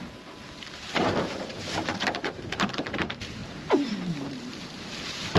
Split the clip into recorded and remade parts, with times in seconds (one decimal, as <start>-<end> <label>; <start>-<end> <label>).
0.0-5.4 remade